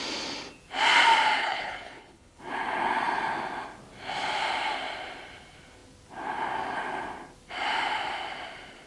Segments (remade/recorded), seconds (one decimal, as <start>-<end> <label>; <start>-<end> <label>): 0.0-1.4 recorded; 1.4-2.4 remade; 2.4-8.9 recorded